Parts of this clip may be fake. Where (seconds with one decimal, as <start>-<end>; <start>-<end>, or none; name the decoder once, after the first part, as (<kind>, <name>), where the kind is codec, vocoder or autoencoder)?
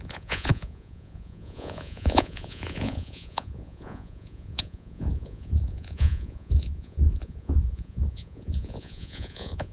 0.0-9.7 (vocoder, Vocos)